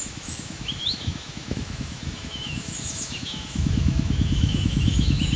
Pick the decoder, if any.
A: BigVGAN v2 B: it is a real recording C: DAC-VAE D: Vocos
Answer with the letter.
C